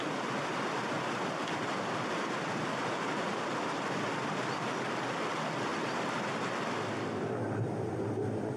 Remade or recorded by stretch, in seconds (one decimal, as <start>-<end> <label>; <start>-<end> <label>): 0.0-8.6 recorded